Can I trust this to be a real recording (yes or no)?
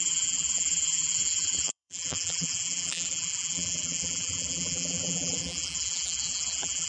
no